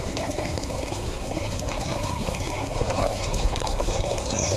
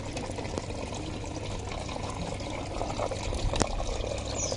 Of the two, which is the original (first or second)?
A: second